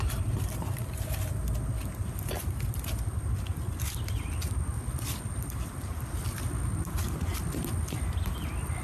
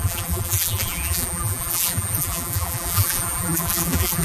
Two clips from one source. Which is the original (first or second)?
first